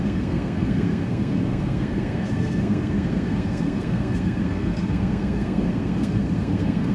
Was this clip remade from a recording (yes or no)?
yes